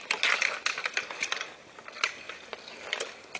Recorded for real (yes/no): yes